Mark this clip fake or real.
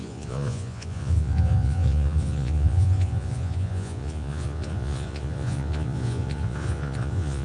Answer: fake